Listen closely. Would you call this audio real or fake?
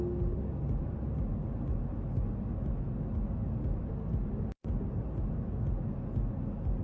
real